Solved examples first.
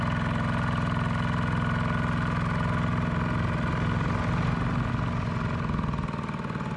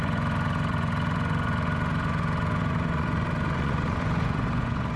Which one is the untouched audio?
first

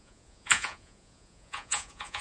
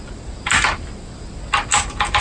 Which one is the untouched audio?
second